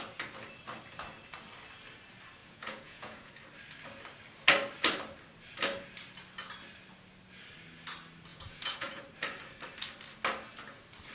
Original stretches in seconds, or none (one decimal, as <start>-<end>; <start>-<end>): 0.0-2.4; 3.3-8.3; 9.0-11.1